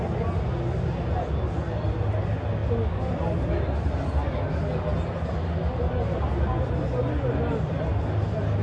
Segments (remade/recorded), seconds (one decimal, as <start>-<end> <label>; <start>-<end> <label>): 0.0-8.6 recorded